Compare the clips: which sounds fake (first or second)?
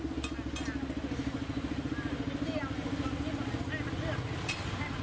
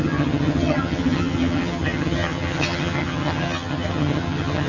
second